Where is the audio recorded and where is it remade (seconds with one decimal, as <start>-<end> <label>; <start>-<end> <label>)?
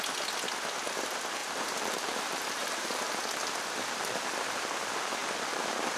0.0-1.4 recorded; 1.4-3.0 remade; 3.0-6.0 recorded